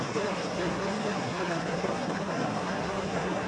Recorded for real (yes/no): no